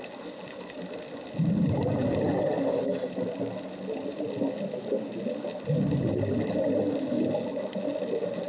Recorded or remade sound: recorded